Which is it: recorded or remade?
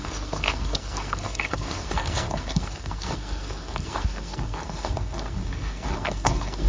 remade